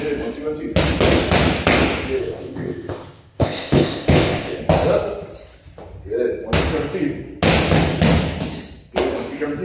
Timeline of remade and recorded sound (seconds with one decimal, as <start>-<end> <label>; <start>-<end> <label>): 0.0-2.2 recorded; 2.2-4.6 remade; 4.6-9.6 recorded